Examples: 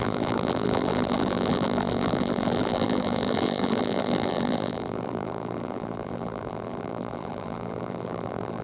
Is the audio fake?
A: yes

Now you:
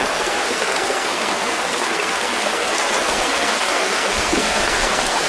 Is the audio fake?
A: yes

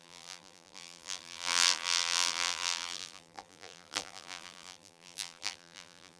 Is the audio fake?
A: yes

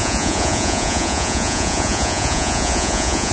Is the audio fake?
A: yes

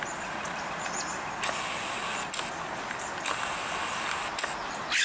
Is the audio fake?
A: no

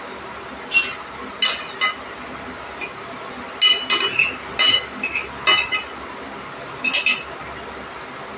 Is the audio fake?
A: no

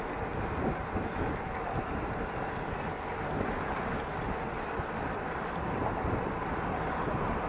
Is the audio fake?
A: no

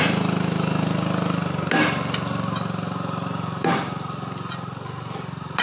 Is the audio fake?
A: no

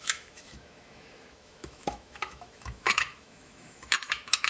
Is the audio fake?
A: yes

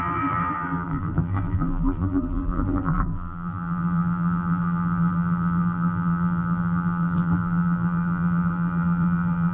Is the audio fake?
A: yes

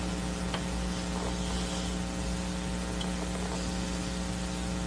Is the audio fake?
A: no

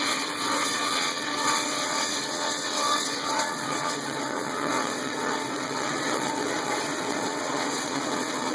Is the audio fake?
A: yes